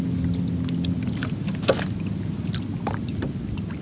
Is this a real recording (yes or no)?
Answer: yes